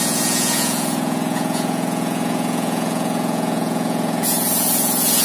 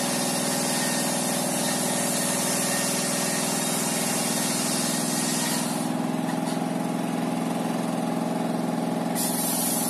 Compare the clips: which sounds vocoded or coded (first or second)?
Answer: first